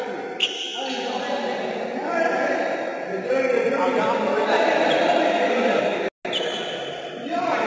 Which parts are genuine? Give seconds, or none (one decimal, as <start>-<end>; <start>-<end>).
0.0-7.7